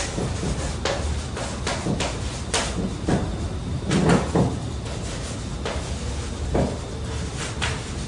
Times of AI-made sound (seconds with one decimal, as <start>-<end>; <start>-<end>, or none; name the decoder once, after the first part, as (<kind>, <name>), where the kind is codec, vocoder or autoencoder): none

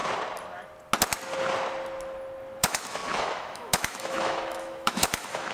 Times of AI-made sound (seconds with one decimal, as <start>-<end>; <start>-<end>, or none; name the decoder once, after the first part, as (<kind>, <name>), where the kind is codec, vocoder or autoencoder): 2.6-5.5 (autoencoder, DAC-VAE)

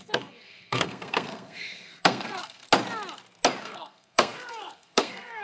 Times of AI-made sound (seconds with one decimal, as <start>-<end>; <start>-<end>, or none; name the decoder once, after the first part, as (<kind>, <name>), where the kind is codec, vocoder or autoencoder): 0.0-2.6 (codec, SNAC); 3.6-5.4

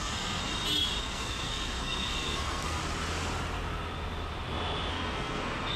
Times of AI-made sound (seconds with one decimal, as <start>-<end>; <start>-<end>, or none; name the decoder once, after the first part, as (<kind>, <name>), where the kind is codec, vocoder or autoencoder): 0.0-0.5 (codec, SNAC); 1.0-2.8; 4.9-5.8

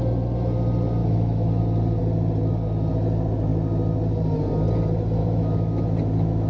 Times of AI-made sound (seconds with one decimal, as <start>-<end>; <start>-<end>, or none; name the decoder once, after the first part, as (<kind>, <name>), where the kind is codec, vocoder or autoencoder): 1.0-1.6 (autoencoder, DAC-VAE); 5.2-6.5